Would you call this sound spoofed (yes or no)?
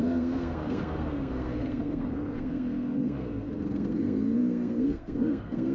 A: yes